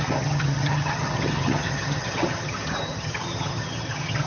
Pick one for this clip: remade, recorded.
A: remade